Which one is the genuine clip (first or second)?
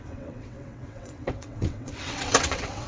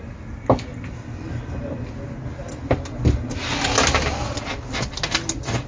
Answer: second